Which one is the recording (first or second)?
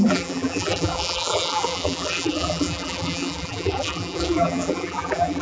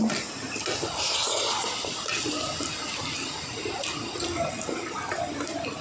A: second